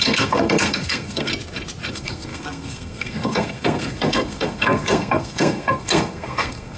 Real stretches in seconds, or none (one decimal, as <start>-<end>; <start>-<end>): 1.3-1.9